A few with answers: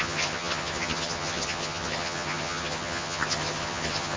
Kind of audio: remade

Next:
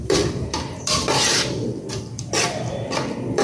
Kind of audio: remade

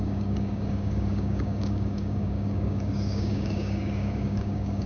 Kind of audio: remade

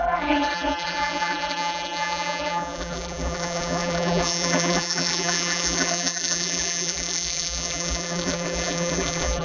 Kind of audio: remade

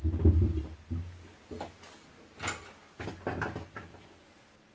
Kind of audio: recorded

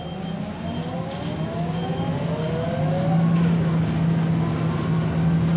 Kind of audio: recorded